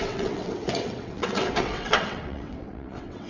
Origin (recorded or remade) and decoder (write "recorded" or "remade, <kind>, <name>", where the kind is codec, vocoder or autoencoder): remade, vocoder, WaveNeXt